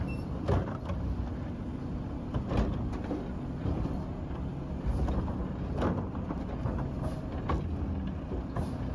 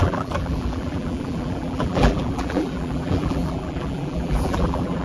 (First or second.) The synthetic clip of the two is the second